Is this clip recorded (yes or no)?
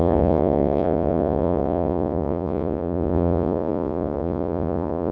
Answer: no